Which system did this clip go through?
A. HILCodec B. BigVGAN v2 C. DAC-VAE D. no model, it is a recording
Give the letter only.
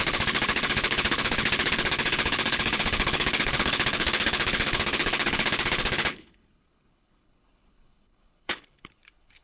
A